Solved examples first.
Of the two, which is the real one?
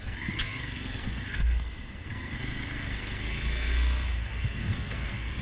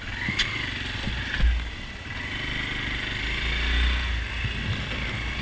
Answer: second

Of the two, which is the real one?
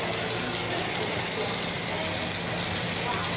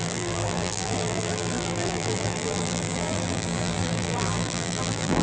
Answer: first